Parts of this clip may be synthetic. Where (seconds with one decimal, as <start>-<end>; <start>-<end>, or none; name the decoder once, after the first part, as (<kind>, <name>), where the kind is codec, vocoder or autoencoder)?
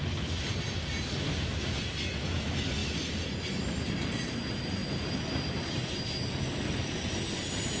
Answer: none